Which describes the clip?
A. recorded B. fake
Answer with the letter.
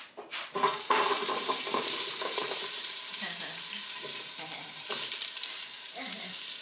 B